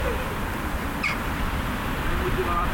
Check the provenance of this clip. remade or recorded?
remade